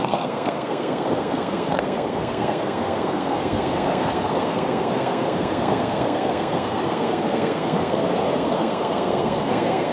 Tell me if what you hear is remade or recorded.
remade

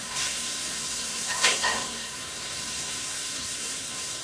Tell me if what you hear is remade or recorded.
remade